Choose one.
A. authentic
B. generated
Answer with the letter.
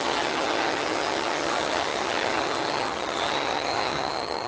B